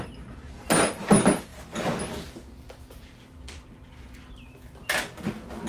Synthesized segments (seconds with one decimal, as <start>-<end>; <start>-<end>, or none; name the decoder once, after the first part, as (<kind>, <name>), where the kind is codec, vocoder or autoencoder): none